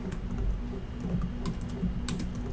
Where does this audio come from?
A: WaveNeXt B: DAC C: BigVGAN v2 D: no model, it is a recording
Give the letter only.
D